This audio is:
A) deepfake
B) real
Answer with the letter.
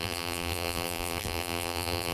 A